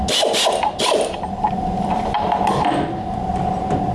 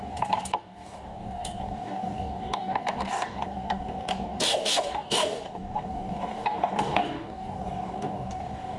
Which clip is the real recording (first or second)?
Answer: first